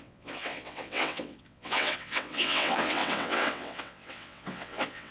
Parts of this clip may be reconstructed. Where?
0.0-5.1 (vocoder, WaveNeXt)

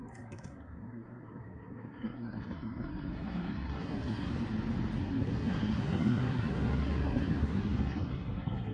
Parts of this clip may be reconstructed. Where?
0.0-4.3 (codec, SNAC); 5.0-8.7

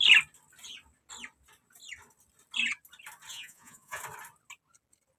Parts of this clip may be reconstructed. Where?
3.3-4.0 (vocoder, Vocos)

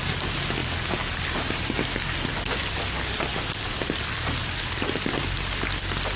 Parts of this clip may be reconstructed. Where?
none

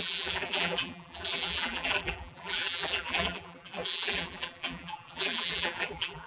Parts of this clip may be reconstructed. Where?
0.0-6.3 (vocoder, BigVGAN v2)